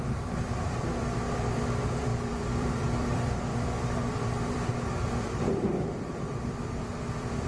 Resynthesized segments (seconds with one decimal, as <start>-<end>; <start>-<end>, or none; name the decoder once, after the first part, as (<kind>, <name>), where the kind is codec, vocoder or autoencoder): 0.0-7.5 (vocoder, BigVGAN v2)